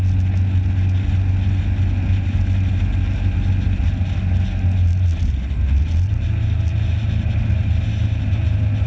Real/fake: real